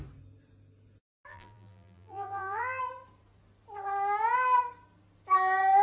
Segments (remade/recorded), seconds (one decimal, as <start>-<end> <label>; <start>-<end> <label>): 0.0-1.3 recorded; 1.3-2.8 remade; 2.8-5.8 recorded

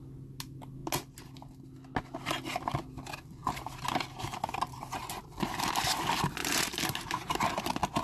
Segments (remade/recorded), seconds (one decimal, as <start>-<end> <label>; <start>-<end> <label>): 0.0-6.4 recorded; 6.4-7.6 remade; 7.6-8.0 recorded

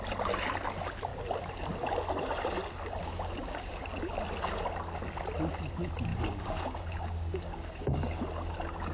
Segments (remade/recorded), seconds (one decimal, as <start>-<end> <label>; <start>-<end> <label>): 0.0-3.0 recorded; 3.0-3.8 remade; 3.8-6.1 recorded; 6.1-8.2 remade; 8.2-8.9 recorded